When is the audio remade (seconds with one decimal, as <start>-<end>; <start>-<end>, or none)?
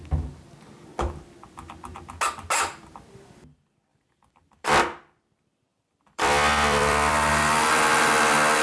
3.9-4.7; 5.7-7.3